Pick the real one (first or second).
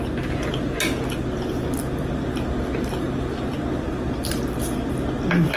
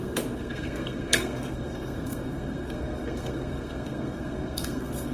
first